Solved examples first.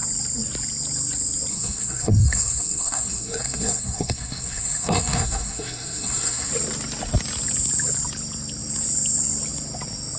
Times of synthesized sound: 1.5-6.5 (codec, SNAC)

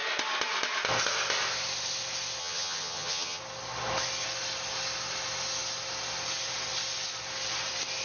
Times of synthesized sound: 2.4-3.4 (vocoder, HiFi-GAN)

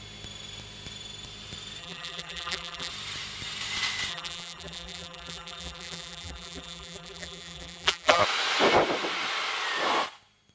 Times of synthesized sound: 1.8-2.9 (vocoder, BigVGAN v2); 4.1-8.2